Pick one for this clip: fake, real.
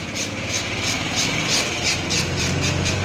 fake